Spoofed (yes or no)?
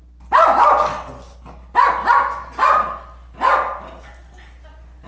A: no